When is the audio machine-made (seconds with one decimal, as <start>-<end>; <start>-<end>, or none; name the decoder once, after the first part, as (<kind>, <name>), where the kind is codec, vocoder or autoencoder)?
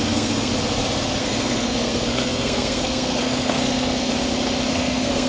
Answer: 0.0-0.5 (codec, SNAC); 1.2-4.1; 4.7-5.3